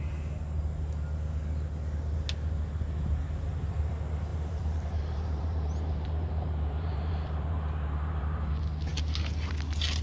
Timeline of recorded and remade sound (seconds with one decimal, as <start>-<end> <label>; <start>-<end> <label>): 0.0-4.3 recorded; 4.3-8.5 remade; 8.5-10.0 recorded

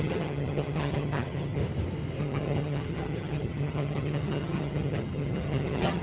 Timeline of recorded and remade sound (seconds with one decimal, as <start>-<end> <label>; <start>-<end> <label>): 0.0-1.6 remade; 1.6-2.2 recorded; 2.2-6.0 remade

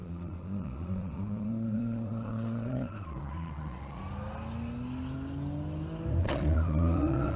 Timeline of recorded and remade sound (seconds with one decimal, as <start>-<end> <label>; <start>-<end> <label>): 0.0-4.0 remade; 4.0-6.2 recorded; 6.2-7.4 remade